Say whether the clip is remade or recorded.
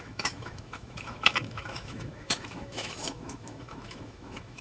remade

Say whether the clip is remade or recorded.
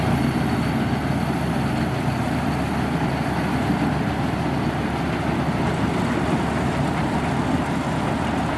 recorded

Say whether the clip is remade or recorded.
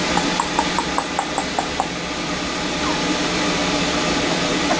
recorded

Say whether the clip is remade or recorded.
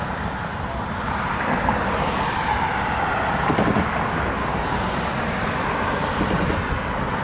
recorded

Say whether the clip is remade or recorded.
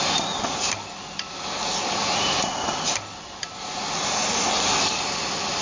recorded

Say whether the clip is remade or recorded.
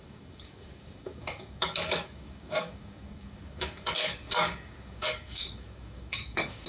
remade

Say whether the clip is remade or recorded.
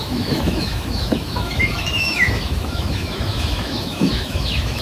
remade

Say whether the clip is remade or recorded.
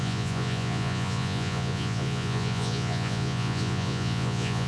remade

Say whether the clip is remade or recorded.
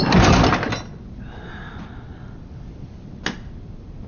recorded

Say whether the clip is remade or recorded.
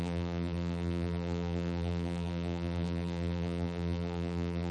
remade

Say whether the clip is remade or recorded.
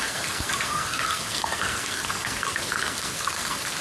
remade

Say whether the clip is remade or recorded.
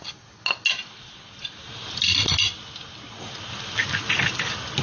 recorded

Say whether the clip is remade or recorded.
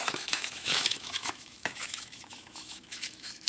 remade